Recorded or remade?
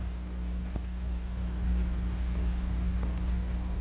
remade